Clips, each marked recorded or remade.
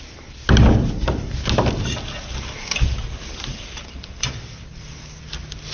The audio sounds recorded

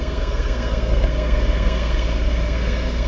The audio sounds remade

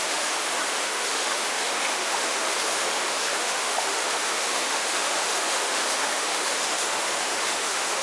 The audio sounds remade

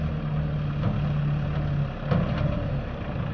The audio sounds recorded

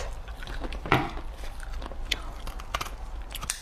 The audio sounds recorded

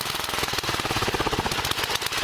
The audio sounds recorded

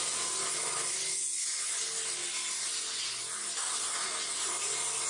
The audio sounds recorded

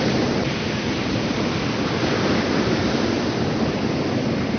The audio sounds remade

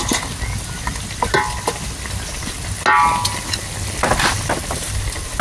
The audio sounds recorded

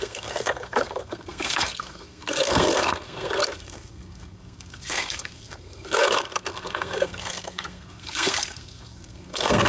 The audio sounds remade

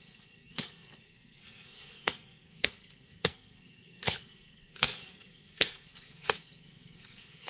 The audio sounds remade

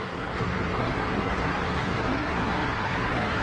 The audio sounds remade